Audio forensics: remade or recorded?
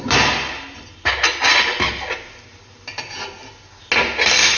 recorded